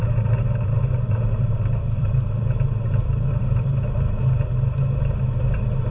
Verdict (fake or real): fake